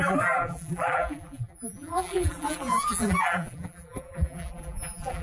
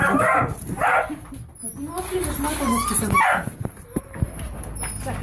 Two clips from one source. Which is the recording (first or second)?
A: second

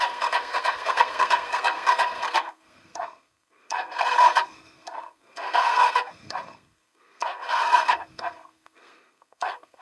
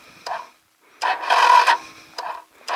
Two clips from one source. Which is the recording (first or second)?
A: second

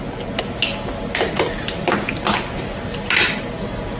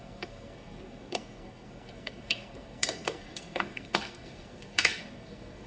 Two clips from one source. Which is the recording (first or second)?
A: first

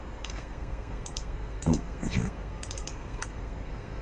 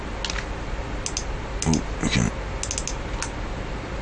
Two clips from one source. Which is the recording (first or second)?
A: second